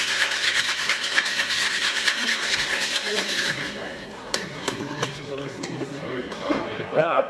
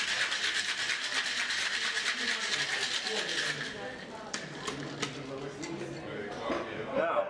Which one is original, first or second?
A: second